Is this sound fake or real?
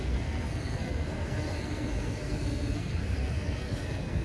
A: fake